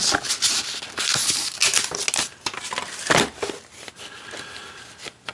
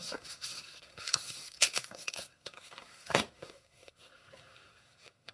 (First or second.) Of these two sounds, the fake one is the second